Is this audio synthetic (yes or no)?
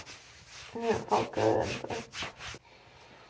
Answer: no